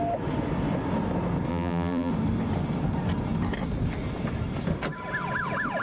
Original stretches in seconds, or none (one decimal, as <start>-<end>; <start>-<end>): 0.0-1.5; 2.1-5.8